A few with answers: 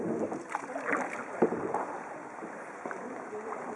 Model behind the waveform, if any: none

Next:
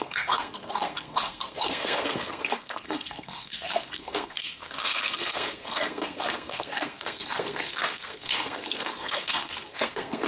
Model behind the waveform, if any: codec, SNAC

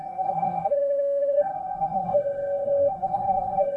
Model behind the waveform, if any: codec, SNAC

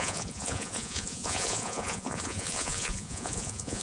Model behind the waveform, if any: vocoder, Vocos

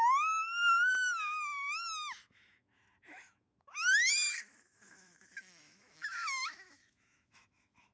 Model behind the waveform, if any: autoencoder, DAC-VAE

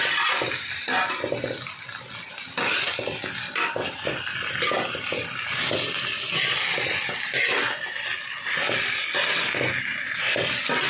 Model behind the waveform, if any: none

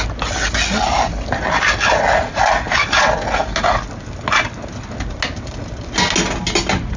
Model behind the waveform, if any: none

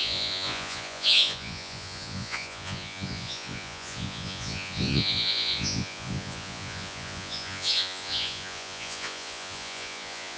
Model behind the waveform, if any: vocoder, Vocos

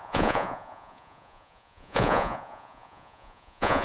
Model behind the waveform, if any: vocoder, Vocos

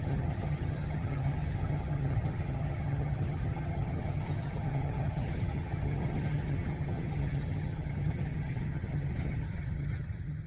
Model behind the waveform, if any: vocoder, HiFi-GAN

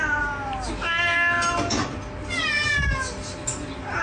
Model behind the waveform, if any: none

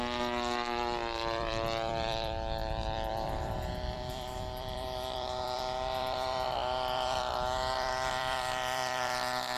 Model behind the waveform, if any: vocoder, BigVGAN v2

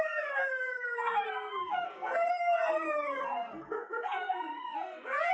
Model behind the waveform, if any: codec, SNAC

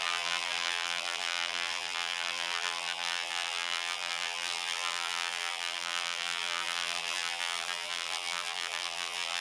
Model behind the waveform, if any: vocoder, BigVGAN v2